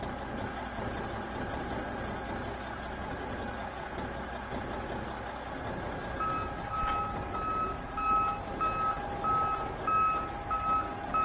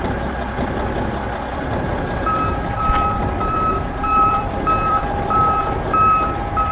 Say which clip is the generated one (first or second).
second